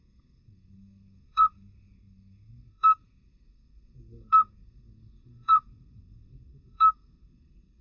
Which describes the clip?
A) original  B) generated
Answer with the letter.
B